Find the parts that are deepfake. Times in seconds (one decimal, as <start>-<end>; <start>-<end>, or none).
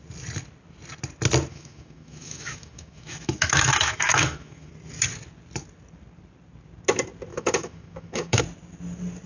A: 1.5-4.7; 7.3-8.4